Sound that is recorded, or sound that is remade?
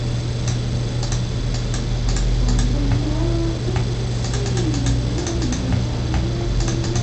recorded